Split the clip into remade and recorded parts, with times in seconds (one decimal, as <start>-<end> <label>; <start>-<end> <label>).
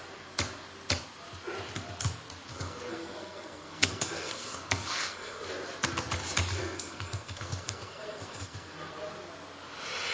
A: 0.0-2.5 recorded; 2.5-5.4 remade; 5.4-6.6 recorded; 6.6-9.0 remade; 9.0-10.1 recorded